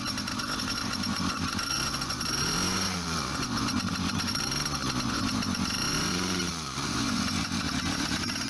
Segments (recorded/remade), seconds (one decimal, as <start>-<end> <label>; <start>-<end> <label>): 0.0-4.3 remade; 4.3-5.0 recorded; 5.0-8.5 remade